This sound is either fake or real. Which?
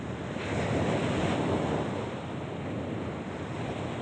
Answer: real